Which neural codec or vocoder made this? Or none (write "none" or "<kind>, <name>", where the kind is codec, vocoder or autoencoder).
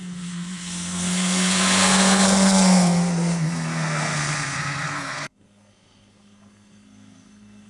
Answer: codec, SNAC